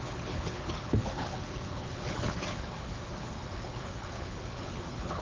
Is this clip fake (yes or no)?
yes